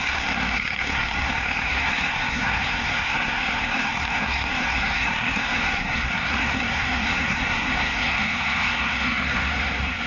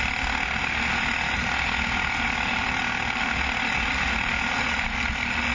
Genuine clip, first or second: second